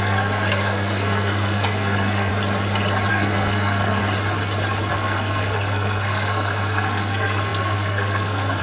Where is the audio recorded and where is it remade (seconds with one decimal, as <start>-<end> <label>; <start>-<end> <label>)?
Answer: 0.0-2.3 remade; 2.3-3.1 recorded; 3.1-4.0 remade; 4.0-4.9 recorded; 4.9-8.6 remade

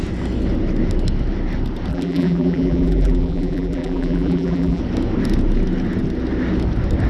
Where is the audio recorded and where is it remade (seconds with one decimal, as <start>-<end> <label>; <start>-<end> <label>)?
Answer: 0.0-1.9 recorded; 1.9-4.8 remade; 4.8-7.1 recorded

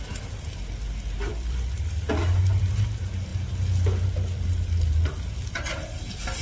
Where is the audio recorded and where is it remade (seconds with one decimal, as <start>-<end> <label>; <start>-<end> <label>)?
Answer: 0.0-6.4 recorded

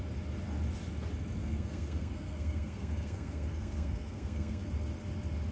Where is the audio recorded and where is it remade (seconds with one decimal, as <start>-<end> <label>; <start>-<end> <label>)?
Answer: 0.0-1.4 recorded; 1.4-4.7 remade; 4.7-5.5 recorded

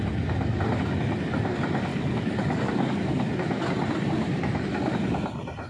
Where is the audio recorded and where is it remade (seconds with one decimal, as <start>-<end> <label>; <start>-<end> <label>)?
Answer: 0.0-1.9 recorded; 1.9-3.3 remade; 3.3-5.7 recorded